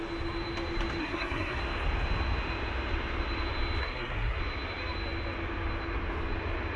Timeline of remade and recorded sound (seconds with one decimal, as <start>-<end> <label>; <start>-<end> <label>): 0.0-1.0 recorded; 1.0-1.6 remade; 1.6-3.8 recorded; 3.8-4.4 remade; 4.4-6.8 recorded